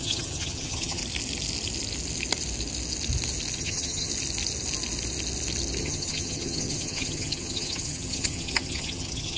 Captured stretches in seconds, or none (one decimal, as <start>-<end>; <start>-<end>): 1.0-3.6; 4.1-5.8